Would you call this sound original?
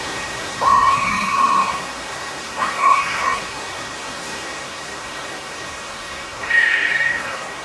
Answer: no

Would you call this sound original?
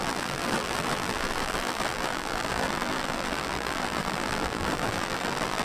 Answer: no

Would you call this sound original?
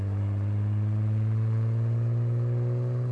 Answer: yes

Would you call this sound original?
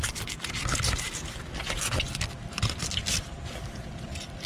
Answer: yes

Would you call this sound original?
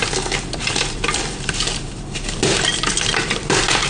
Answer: no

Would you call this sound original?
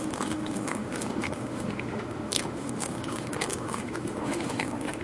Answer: no